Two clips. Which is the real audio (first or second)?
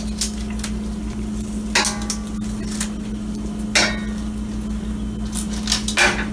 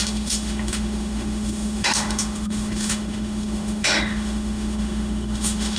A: first